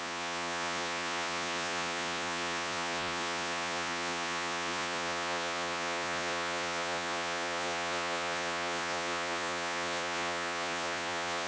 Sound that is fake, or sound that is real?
fake